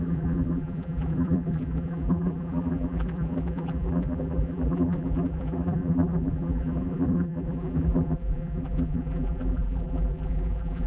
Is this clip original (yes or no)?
no